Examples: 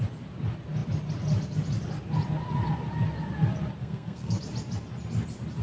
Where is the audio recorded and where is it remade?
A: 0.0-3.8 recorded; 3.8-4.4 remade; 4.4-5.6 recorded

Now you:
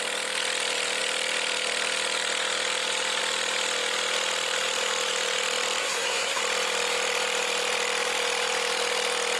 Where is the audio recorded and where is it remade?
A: 0.0-5.8 recorded; 5.8-6.4 remade; 6.4-9.4 recorded

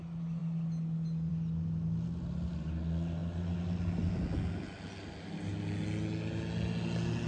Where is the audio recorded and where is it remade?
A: 0.0-7.3 recorded

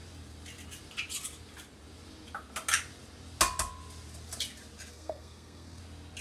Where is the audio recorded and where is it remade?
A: 0.0-4.9 recorded; 4.9-5.8 remade; 5.8-6.2 recorded